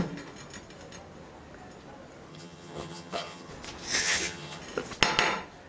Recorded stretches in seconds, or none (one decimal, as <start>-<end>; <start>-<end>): 0.0-2.3; 3.5-4.0; 4.6-5.7